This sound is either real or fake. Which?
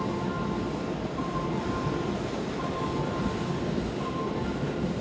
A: real